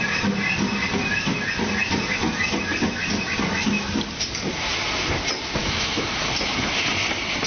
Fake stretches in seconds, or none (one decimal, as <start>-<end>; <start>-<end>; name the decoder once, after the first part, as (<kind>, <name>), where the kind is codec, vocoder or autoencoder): 5.6-6.1 (autoencoder, DAC-VAE)